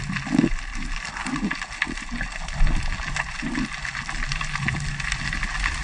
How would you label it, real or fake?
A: real